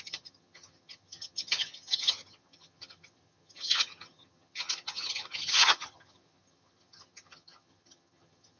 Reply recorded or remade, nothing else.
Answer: remade